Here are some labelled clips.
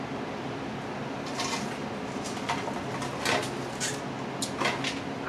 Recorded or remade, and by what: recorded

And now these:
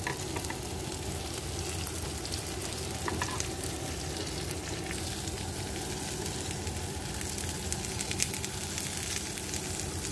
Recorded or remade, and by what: recorded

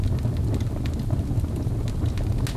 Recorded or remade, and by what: recorded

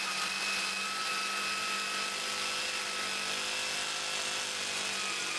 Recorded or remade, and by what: recorded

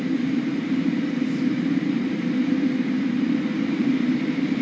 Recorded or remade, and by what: remade, vocoder, BigVGAN v2